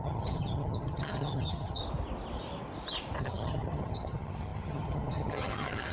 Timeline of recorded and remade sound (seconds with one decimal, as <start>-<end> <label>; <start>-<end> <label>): 0.0-1.8 remade; 1.8-3.2 recorded; 3.2-5.9 remade